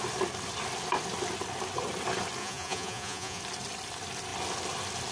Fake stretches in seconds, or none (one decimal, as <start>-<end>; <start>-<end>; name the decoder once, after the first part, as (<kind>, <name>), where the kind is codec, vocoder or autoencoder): 2.4-3.4 (vocoder, Vocos)